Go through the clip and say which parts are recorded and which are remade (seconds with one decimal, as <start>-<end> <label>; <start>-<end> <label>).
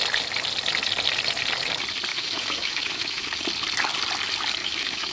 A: 0.0-2.1 recorded; 2.1-3.4 remade; 3.4-4.6 recorded; 4.6-5.1 remade